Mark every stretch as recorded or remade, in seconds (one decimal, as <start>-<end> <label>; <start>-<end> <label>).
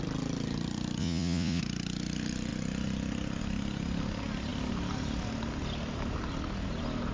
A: 0.0-1.0 recorded; 1.0-1.6 remade; 1.6-7.1 recorded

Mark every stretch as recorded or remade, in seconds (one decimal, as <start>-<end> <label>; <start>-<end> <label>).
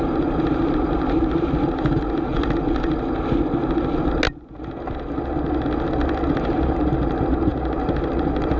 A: 0.0-2.3 remade; 2.3-6.3 recorded; 6.3-8.6 remade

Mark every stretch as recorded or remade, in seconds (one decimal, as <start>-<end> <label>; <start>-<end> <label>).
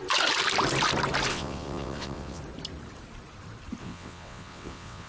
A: 0.0-1.3 recorded; 1.3-2.4 remade; 2.4-3.8 recorded; 3.8-5.1 remade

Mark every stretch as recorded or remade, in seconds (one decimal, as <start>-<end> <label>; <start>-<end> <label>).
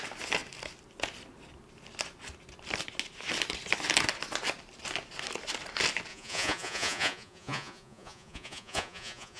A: 0.0-6.1 recorded; 6.1-9.4 remade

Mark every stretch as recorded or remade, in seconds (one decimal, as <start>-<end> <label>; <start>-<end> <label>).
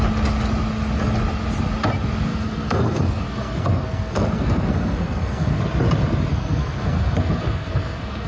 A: 0.0-2.3 recorded; 2.3-5.6 remade; 5.6-6.3 recorded; 6.3-8.3 remade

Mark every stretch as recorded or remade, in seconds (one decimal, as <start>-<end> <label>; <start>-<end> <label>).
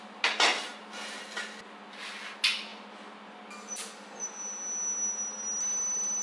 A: 0.0-6.2 recorded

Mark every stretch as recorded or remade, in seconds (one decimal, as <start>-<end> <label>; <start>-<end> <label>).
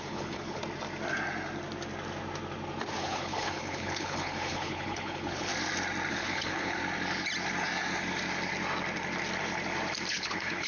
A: 0.0-0.6 remade; 0.6-3.0 recorded; 3.0-5.5 remade; 5.5-6.1 recorded; 6.1-6.8 remade; 6.8-10.1 recorded; 10.1-10.7 remade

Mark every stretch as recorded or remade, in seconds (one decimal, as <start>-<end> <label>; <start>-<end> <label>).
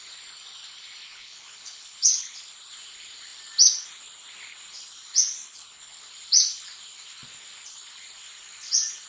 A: 0.0-1.0 recorded; 1.0-2.4 remade; 2.4-5.4 recorded; 5.4-6.0 remade; 6.0-9.1 recorded